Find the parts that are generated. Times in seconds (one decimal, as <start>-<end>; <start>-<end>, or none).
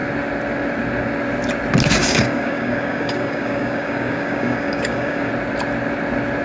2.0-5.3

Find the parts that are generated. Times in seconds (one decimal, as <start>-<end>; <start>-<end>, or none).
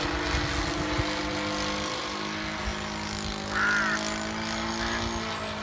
none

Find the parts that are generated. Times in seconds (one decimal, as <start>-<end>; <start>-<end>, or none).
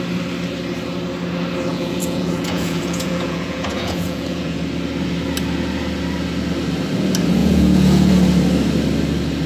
1.7-4.6; 7.4-8.1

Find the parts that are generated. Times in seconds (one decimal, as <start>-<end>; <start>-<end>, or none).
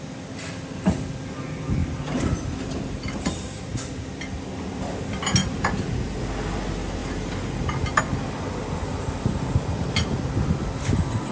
1.8-3.7; 5.4-6.2; 7.0-8.0; 8.8-10.7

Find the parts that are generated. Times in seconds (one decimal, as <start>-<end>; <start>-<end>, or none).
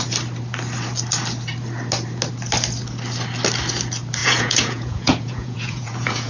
4.2-6.3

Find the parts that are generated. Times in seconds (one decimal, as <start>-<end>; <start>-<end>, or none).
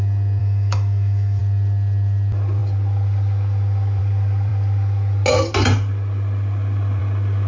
0.4-1.4